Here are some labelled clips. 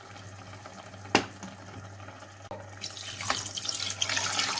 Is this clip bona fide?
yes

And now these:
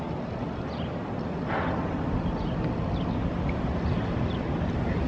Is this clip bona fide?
yes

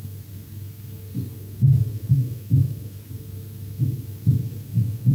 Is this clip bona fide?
no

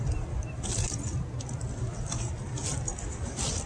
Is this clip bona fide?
yes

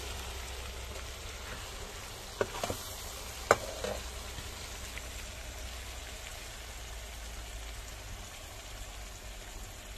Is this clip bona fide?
yes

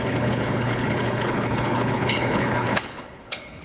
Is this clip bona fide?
no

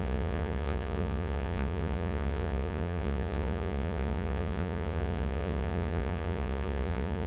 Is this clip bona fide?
no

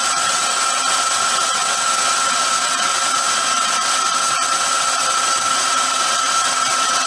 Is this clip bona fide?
no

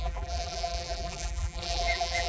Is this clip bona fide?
no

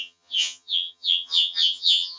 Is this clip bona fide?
no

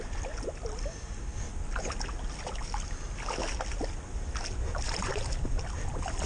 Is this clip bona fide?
yes